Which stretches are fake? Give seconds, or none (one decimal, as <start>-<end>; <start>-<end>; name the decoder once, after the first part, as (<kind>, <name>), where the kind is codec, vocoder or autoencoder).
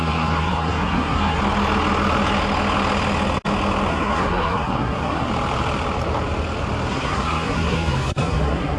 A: 0.0-1.4 (codec, SNAC); 3.9-5.3; 6.9-8.8